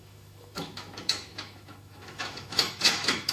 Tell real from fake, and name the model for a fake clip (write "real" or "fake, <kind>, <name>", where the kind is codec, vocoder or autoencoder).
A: fake, autoencoder, DAC-VAE